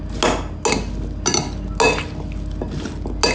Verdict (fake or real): real